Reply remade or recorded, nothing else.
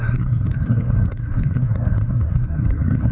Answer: remade